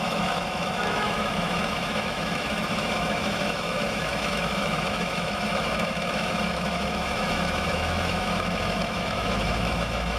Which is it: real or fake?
fake